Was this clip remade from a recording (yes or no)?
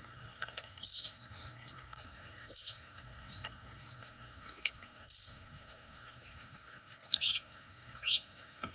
yes